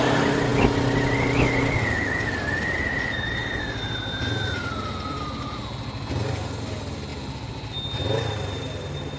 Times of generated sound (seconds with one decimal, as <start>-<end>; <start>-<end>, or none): none

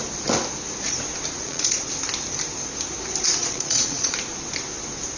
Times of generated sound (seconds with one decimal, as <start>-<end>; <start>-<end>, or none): 1.4-1.9; 3.4-4.1

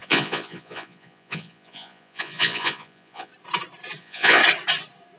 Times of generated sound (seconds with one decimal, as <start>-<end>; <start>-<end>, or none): 0.0-3.3; 4.0-4.4

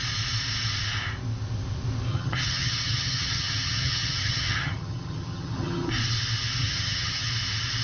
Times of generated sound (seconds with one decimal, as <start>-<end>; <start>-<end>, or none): 2.1-5.9; 6.6-7.3

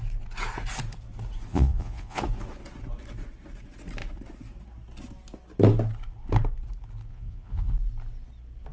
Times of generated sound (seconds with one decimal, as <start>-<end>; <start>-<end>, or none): 1.5-2.2; 7.1-7.7

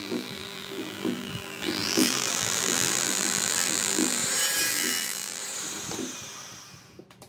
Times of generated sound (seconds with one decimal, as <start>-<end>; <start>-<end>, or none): 0.0-4.2; 4.7-5.4

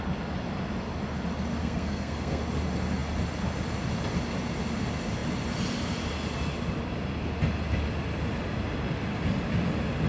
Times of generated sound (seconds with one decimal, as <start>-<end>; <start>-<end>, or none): 1.6-2.4